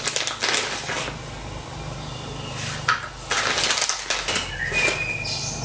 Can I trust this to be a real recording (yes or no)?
yes